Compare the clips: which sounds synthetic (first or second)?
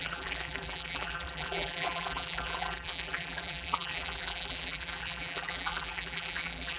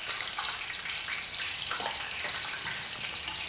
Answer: first